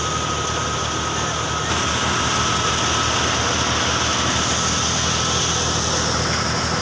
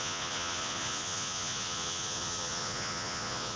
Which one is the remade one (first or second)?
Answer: second